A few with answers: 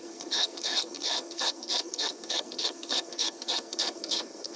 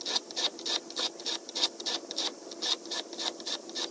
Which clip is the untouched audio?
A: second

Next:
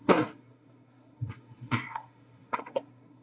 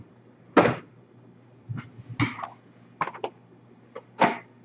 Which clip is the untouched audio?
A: second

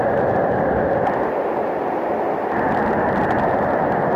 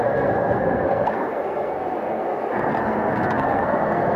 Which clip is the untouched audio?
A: first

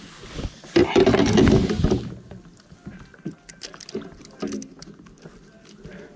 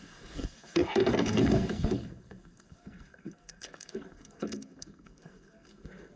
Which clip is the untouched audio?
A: first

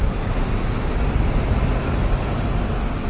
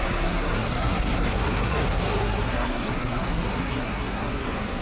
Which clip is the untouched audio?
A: first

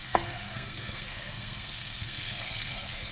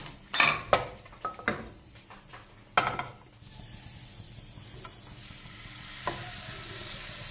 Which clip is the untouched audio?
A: second